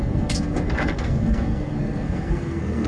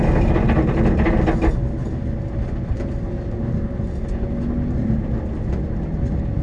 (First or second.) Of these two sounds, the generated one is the first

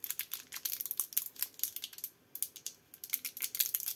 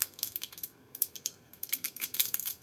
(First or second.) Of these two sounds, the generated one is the second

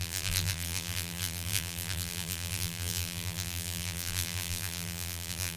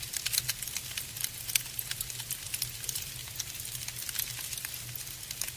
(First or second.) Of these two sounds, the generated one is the first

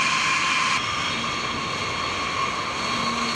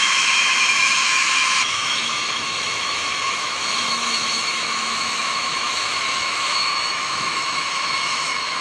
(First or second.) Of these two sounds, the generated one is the second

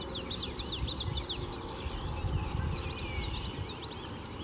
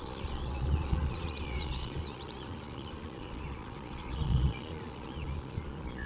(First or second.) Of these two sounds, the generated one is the second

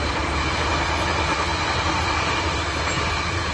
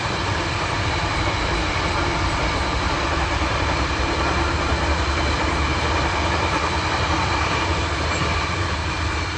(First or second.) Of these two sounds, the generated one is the second